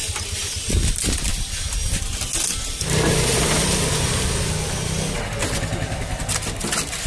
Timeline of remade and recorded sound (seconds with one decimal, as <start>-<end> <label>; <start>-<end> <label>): 0.0-7.1 recorded